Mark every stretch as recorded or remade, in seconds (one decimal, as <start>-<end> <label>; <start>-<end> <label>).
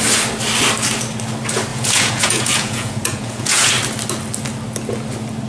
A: 0.0-1.7 recorded; 1.7-3.7 remade; 3.7-5.5 recorded